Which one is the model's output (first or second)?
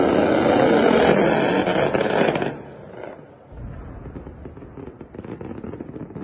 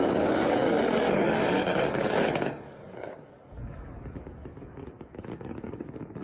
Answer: second